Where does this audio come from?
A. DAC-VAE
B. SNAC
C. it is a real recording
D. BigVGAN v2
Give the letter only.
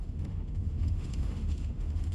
A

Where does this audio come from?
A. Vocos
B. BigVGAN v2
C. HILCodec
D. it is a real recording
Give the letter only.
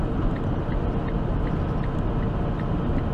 D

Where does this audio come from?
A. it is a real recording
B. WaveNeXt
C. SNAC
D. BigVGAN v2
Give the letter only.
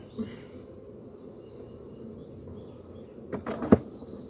A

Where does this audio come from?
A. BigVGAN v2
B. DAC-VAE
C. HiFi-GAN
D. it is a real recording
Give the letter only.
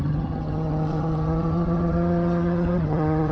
C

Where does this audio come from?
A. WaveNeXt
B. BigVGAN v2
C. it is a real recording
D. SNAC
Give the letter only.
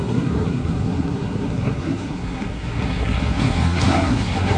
D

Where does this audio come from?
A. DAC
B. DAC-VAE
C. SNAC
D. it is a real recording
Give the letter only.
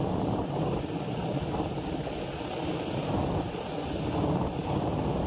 D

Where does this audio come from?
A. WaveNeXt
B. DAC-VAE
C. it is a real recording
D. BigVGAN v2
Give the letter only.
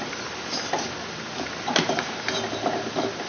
C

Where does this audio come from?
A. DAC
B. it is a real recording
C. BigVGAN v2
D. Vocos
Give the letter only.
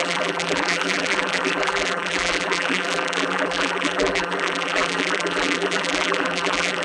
C